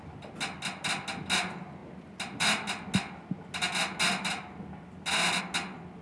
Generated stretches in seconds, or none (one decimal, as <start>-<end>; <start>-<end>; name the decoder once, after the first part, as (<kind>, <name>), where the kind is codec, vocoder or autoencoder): none